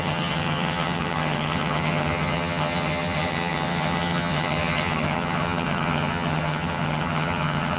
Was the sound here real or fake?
fake